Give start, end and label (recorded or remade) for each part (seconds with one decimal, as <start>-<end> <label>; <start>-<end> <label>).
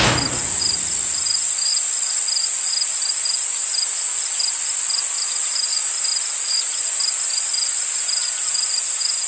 0.0-9.3 recorded